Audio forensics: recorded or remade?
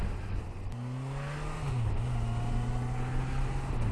recorded